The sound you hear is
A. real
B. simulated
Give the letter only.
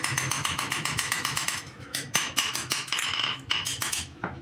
B